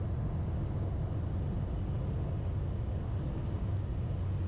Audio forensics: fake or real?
real